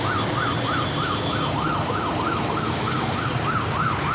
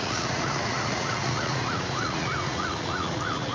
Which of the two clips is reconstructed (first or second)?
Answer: second